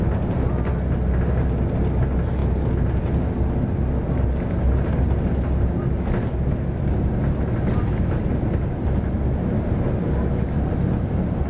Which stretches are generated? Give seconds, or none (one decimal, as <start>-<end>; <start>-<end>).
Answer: none